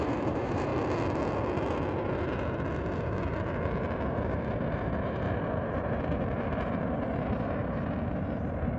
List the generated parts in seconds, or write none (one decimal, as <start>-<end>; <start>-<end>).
0.0-0.7; 4.1-8.8